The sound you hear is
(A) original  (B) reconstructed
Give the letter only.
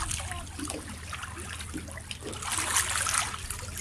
A